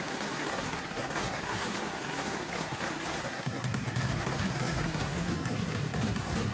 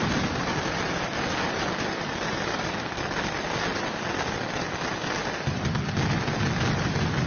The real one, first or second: second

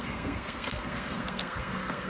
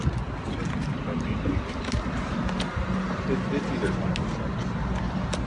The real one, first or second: second